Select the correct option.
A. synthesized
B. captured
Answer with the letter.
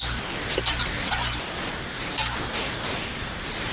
B